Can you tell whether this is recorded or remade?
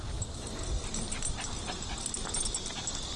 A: recorded